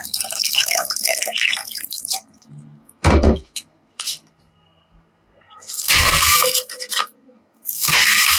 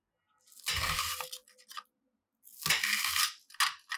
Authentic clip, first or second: second